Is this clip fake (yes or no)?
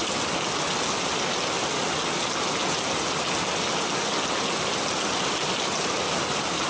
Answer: no